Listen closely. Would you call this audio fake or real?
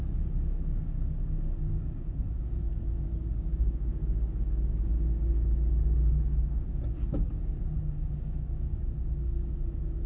fake